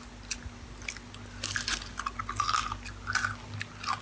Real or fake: real